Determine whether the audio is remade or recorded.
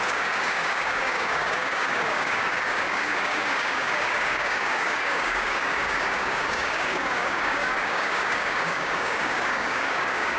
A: remade